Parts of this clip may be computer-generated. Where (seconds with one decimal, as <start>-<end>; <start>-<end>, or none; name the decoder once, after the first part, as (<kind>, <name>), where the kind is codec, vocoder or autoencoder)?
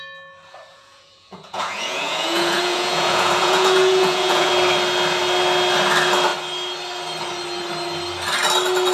0.7-4.5 (vocoder, Vocos)